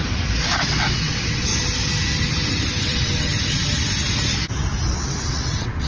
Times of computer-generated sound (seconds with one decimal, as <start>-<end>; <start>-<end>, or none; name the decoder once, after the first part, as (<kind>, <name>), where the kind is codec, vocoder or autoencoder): 0.6-1.5 (vocoder, WaveNeXt); 2.8-3.3; 5.3-5.9